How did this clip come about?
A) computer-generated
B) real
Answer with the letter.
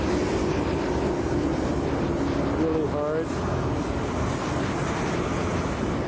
B